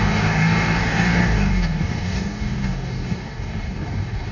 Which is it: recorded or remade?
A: remade